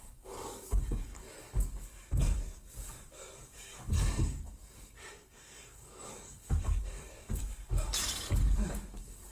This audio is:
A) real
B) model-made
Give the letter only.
B